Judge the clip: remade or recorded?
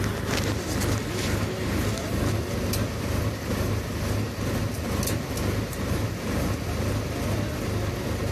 recorded